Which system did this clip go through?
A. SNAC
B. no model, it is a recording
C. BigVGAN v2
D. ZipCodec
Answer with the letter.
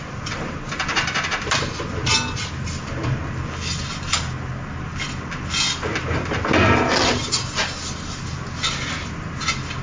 B